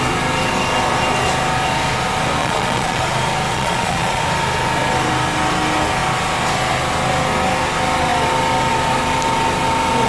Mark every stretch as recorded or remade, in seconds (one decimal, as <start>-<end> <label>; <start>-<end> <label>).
0.0-2.4 recorded; 2.4-3.0 remade; 3.0-3.5 recorded; 3.5-4.2 remade; 4.2-10.1 recorded

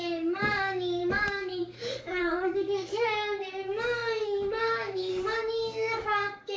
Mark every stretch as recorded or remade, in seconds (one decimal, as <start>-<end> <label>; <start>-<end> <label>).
0.0-6.6 remade